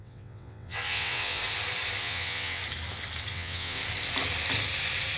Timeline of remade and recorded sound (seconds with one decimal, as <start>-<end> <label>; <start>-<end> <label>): 0.0-1.4 remade; 1.4-2.0 recorded; 2.0-2.6 remade; 2.6-3.3 recorded; 3.3-3.8 remade; 3.8-5.2 recorded